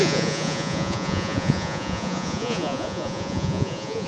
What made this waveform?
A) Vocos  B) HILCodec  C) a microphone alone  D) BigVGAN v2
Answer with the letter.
A